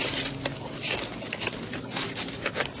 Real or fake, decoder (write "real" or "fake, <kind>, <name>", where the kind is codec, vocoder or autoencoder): real